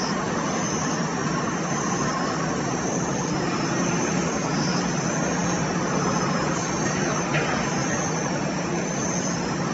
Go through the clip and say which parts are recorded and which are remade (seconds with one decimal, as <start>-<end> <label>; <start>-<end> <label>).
0.0-1.2 recorded; 1.2-3.3 remade; 3.3-9.7 recorded